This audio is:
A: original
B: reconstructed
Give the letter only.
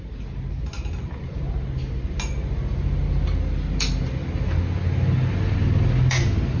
A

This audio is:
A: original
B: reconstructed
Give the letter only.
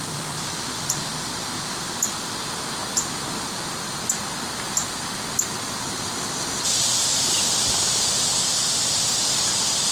A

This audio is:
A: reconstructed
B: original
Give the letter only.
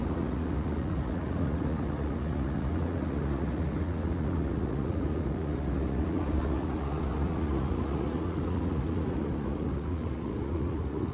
A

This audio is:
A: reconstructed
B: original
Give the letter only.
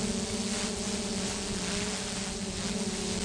B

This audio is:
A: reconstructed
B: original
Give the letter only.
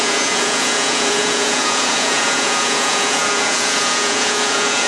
A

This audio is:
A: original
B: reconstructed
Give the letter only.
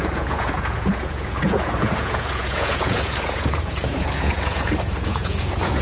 B